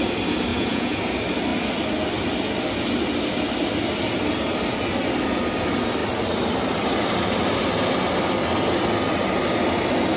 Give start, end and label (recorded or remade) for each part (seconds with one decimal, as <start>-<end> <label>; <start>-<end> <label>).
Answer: 0.0-0.5 recorded; 0.5-1.0 remade; 1.0-10.2 recorded